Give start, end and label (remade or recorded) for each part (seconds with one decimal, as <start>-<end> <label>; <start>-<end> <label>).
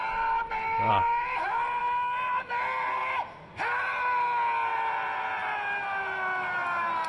0.0-7.1 recorded